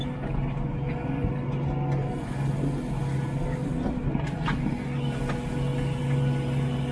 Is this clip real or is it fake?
real